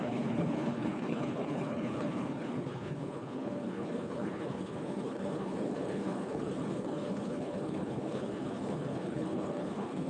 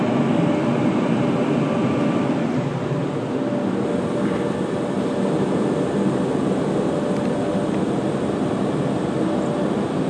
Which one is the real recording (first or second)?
second